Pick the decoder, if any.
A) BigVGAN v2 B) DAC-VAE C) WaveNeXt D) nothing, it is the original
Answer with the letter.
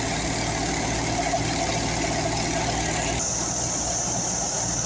D